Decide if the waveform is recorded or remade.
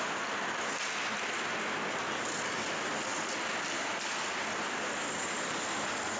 recorded